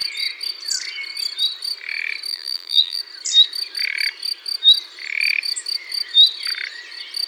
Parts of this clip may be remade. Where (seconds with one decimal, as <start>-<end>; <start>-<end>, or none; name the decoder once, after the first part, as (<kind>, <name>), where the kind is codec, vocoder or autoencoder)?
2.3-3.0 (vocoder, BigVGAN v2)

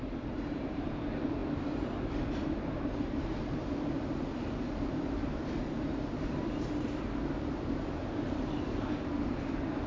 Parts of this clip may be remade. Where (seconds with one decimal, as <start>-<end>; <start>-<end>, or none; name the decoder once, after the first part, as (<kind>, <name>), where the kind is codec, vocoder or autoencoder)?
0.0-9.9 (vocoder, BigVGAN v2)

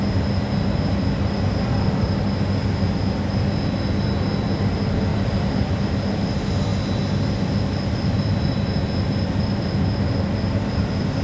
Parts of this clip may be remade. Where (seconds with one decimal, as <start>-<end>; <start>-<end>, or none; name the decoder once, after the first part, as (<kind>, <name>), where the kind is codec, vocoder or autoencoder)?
5.1-5.9 (vocoder, BigVGAN v2)

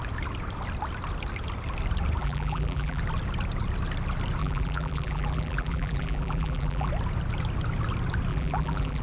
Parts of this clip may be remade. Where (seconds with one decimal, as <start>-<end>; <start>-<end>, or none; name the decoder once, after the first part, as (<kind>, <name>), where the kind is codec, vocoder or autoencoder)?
2.2-3.0 (vocoder, BigVGAN v2); 4.4-6.9; 8.3-9.0

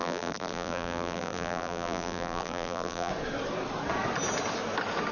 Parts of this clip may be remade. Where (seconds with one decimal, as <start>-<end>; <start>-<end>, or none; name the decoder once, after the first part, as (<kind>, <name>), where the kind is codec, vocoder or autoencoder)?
0.0-3.1 (vocoder, BigVGAN v2)

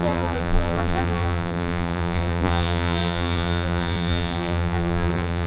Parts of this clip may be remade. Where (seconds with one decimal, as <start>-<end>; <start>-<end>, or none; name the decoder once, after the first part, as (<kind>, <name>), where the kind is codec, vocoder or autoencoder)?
0.0-5.5 (vocoder, BigVGAN v2)